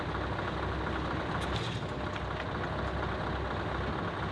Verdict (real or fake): real